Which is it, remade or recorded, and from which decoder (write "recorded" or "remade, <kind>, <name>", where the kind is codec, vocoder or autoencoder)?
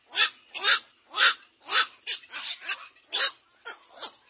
recorded